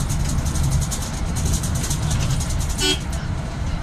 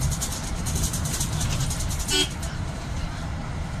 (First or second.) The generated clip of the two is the second